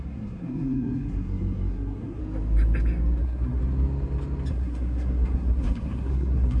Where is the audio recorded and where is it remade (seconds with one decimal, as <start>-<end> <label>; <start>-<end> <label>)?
0.0-2.2 remade; 2.2-3.2 recorded; 3.2-3.6 remade; 3.6-4.5 recorded; 4.5-6.6 remade